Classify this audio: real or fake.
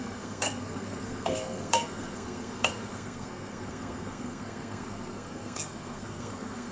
fake